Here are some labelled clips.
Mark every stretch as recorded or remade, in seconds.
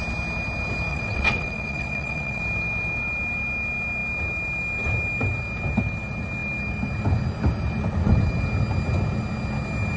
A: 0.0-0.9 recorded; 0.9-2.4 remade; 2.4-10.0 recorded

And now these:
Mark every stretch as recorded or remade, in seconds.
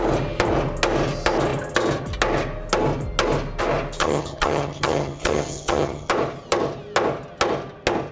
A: 0.0-4.0 recorded; 4.0-6.1 remade; 6.1-8.1 recorded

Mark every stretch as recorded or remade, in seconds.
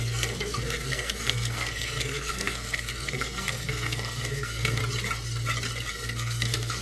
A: 0.0-4.8 remade; 4.8-5.9 recorded; 5.9-6.8 remade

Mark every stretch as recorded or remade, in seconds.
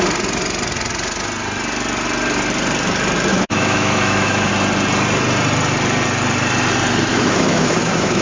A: 0.0-3.3 recorded; 3.3-4.5 remade; 4.5-7.1 recorded; 7.1-8.2 remade